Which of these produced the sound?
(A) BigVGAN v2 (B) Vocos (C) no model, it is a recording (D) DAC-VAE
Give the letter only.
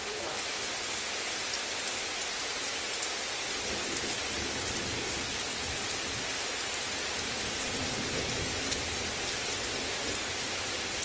C